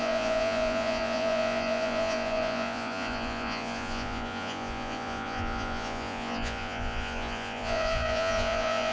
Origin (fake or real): fake